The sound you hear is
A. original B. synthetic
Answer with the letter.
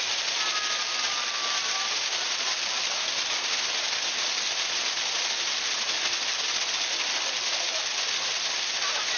A